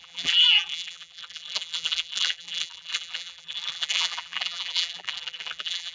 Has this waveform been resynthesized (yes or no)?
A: yes